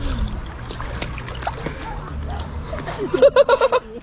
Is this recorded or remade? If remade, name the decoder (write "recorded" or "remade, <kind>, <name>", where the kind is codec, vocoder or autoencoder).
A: recorded